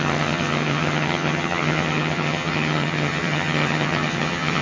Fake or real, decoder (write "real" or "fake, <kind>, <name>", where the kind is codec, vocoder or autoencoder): fake, vocoder, HiFi-GAN